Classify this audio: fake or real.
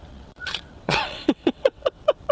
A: fake